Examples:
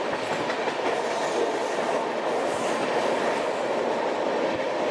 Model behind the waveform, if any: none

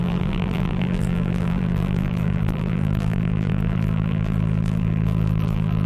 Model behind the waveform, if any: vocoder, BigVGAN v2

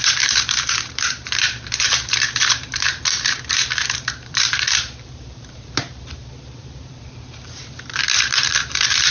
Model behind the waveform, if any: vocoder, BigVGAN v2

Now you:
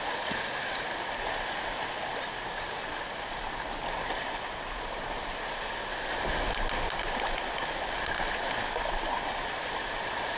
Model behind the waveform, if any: none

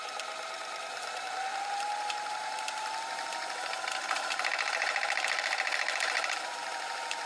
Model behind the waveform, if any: vocoder, BigVGAN v2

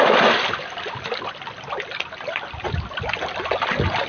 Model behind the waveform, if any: none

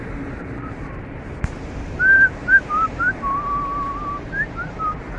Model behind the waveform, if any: vocoder, BigVGAN v2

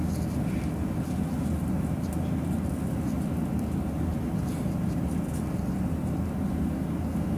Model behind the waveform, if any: none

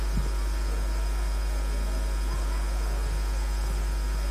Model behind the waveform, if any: none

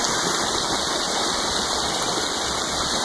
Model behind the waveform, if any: none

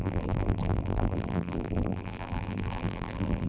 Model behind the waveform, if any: vocoder, BigVGAN v2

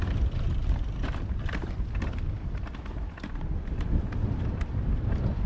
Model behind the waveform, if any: vocoder, BigVGAN v2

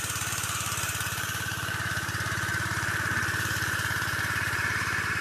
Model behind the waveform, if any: vocoder, BigVGAN v2